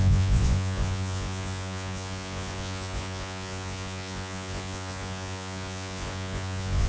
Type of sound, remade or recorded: remade